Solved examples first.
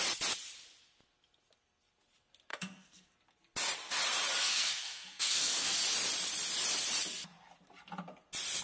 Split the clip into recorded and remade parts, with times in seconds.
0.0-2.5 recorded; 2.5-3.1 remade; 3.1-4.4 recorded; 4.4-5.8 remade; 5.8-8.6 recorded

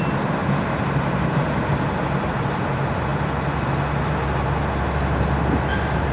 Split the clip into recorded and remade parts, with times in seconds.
0.0-6.1 recorded

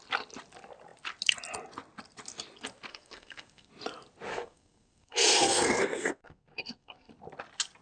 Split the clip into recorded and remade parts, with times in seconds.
0.0-2.9 recorded; 2.9-3.7 remade; 3.7-4.3 recorded; 4.3-7.1 remade; 7.1-7.8 recorded

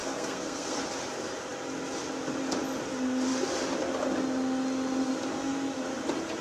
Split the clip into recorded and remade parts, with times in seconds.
0.0-0.8 remade; 0.8-6.4 recorded

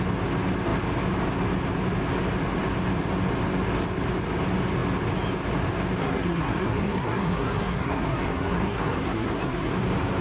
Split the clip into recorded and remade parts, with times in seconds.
0.0-6.0 recorded; 6.0-9.7 remade; 9.7-10.2 recorded